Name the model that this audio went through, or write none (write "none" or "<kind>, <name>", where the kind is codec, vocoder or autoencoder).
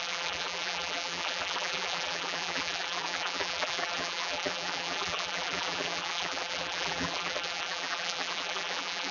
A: vocoder, BigVGAN v2